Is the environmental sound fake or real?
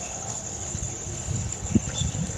fake